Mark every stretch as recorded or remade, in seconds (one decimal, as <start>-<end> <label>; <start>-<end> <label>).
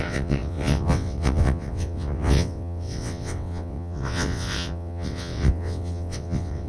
0.0-6.7 remade